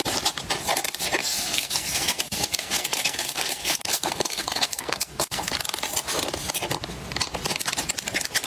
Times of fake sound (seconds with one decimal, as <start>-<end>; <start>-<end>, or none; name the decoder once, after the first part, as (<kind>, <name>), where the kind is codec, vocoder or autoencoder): 1.2-5.5 (codec, SNAC)